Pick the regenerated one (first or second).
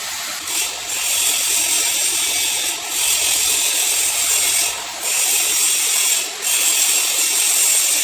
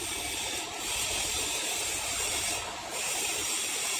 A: second